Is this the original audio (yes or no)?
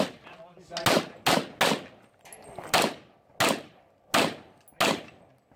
yes